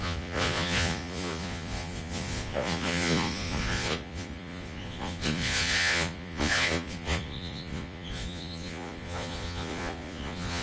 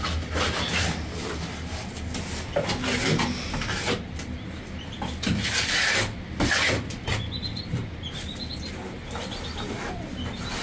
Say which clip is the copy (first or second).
first